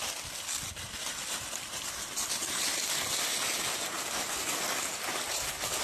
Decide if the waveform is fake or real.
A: real